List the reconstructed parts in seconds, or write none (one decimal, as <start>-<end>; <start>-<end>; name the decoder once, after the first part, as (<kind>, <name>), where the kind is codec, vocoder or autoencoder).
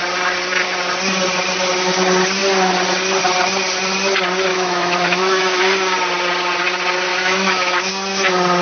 4.5-5.6 (autoencoder, DAC-VAE); 7.1-7.9